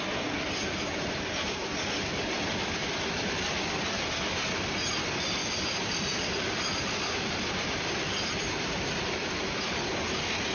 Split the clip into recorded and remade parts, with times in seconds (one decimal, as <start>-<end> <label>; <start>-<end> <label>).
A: 0.0-2.8 recorded; 2.8-4.1 remade; 4.1-5.4 recorded; 5.4-9.0 remade; 9.0-10.5 recorded